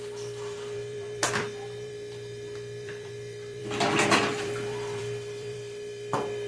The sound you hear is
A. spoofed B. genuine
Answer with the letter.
A